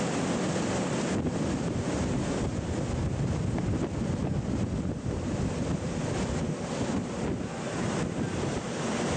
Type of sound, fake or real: real